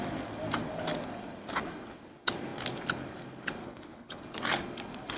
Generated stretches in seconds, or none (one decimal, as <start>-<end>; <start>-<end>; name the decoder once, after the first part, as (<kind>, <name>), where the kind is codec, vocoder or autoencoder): 3.6-4.2 (codec, HILCodec)